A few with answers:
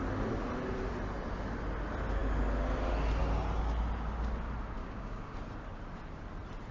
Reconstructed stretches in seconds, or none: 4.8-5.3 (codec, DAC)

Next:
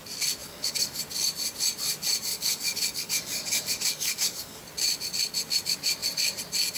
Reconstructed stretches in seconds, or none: 0.4-1.0 (codec, DAC); 2.3-4.6

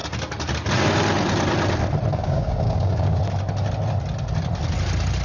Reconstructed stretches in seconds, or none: 2.1-3.2 (codec, DAC)

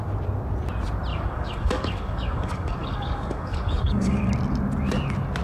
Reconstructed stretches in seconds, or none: 1.1-4.3 (codec, DAC)

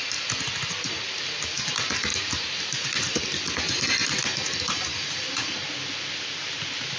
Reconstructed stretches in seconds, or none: none

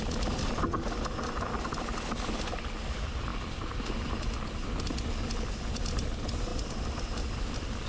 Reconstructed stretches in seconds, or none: none